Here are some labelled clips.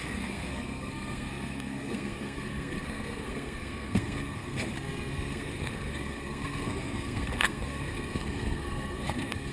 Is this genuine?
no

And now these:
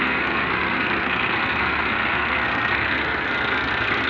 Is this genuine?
no